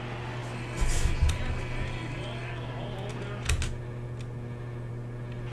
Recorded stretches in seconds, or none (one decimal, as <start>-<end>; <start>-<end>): 0.0-5.5